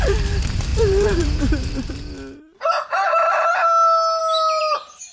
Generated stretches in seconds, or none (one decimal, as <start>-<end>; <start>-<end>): 0.7-1.9